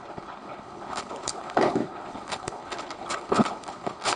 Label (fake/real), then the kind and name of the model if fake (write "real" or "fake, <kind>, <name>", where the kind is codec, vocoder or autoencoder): fake, codec, HILCodec